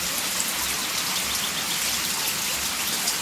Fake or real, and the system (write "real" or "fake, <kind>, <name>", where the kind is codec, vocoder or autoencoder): real